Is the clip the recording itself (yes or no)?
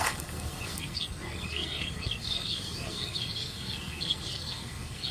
no